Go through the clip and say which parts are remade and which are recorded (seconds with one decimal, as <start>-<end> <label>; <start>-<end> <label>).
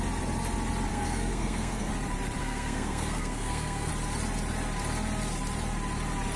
0.0-0.9 recorded; 0.9-1.9 remade; 1.9-2.4 recorded; 2.4-3.9 remade; 3.9-6.4 recorded